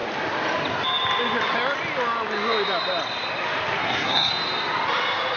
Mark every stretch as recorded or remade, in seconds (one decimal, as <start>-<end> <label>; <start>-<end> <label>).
0.0-3.8 recorded; 3.8-4.3 remade; 4.3-5.4 recorded